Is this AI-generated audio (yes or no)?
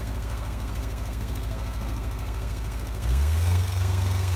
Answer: yes